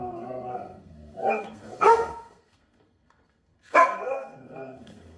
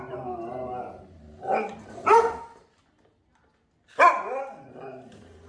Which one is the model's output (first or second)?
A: first